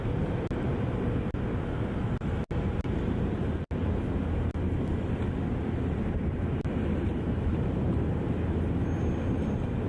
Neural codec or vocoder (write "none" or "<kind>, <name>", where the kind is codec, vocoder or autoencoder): none